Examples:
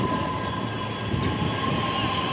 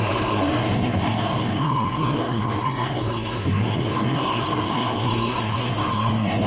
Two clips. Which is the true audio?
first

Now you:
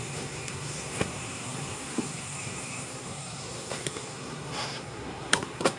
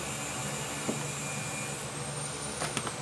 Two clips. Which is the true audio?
second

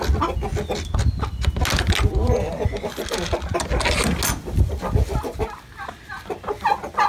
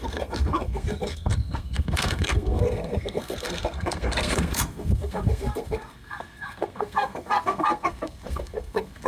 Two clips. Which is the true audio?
first